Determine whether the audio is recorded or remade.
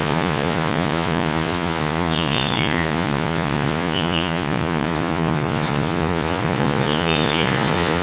remade